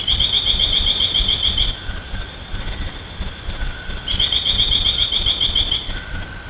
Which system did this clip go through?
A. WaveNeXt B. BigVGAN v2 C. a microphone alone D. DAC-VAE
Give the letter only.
C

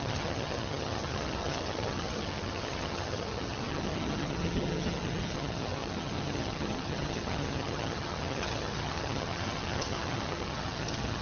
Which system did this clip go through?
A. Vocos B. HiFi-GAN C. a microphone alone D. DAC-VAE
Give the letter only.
B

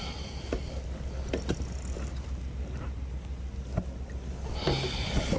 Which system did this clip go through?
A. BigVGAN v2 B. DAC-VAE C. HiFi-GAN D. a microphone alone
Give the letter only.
D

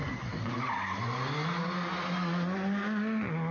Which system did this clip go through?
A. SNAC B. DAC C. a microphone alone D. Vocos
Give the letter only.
C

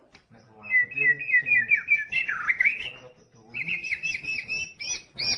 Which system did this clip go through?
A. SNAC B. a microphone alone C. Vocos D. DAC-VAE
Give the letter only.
B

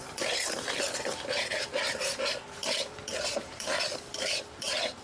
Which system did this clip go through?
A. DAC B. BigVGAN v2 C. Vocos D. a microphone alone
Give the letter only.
B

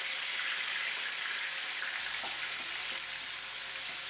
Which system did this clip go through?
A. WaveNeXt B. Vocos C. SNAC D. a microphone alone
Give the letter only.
D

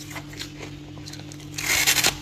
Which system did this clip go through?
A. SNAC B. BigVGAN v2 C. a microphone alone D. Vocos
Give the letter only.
C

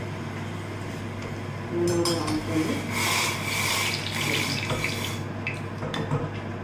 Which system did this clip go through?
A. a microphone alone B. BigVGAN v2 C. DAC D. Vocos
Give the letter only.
A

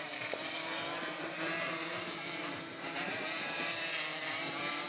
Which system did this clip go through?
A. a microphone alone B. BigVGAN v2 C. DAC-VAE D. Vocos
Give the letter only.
B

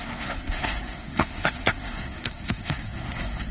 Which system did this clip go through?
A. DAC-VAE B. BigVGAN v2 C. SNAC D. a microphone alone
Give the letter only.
C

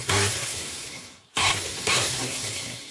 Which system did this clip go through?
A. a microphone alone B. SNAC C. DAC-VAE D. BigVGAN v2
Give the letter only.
B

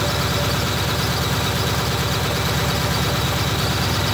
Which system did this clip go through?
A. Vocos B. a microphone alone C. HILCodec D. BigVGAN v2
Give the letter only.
B